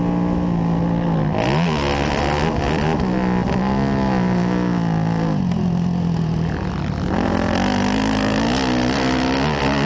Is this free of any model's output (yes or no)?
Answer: yes